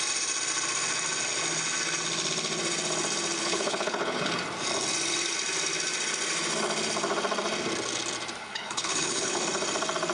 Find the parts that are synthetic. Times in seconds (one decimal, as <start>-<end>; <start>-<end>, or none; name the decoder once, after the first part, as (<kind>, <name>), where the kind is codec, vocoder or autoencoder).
3.4-4.3 (codec, HILCodec); 8.4-9.4